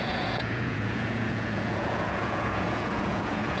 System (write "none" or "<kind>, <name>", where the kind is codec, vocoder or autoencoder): vocoder, Vocos